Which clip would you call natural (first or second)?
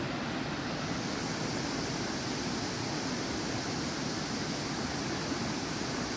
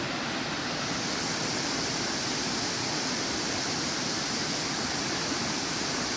first